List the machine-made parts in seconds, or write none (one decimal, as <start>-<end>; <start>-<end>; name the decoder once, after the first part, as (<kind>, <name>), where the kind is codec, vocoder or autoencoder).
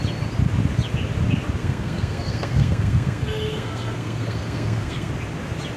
1.6-5.1 (codec, SNAC)